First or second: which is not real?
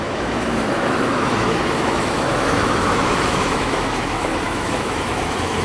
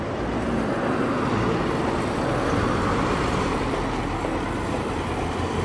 first